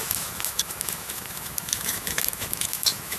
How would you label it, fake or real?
fake